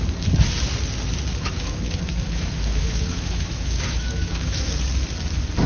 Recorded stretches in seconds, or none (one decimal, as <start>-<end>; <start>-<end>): 0.0-1.3; 4.7-5.7